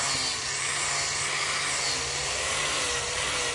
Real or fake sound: real